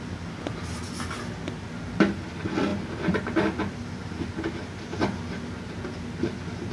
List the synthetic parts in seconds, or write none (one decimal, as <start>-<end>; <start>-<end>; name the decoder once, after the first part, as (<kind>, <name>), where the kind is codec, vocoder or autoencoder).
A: 2.7-6.7 (vocoder, BigVGAN v2)